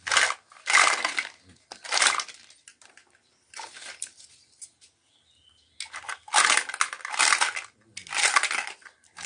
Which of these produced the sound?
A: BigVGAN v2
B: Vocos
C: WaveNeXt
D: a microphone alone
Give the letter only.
D